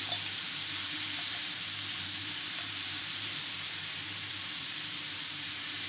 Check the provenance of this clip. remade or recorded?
remade